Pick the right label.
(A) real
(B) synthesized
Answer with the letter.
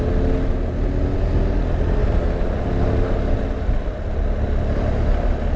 A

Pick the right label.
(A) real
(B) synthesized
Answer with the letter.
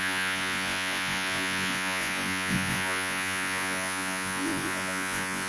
B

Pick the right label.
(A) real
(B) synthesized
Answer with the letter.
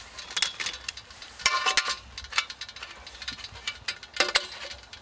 A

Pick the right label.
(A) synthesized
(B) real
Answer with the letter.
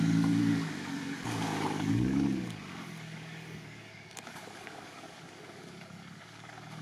A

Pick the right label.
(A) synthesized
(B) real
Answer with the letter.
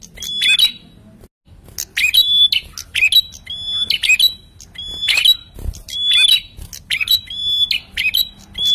B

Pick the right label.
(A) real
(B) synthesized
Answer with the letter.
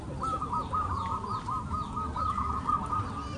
B